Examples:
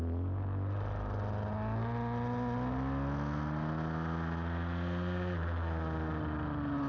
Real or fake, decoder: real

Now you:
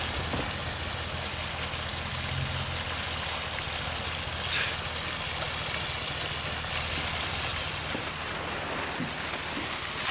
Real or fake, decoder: real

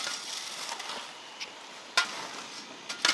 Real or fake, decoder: real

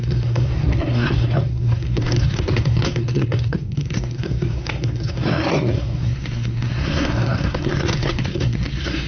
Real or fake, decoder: fake, codec, SNAC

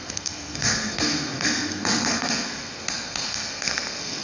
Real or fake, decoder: fake, codec, SNAC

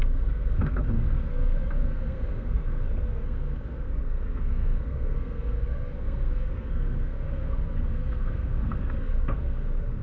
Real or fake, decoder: fake, codec, SNAC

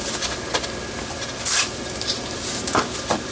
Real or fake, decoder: real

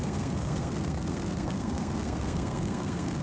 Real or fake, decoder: fake, codec, SNAC